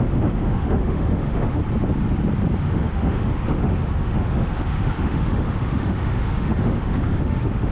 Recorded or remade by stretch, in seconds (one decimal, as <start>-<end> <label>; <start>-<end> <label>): 0.0-1.6 remade; 1.6-2.6 recorded; 2.6-7.7 remade